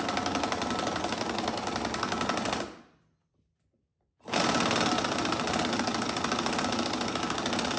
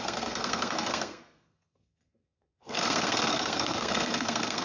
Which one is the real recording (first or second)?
first